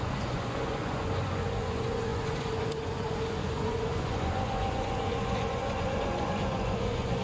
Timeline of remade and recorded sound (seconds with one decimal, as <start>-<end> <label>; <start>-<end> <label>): 0.0-7.2 remade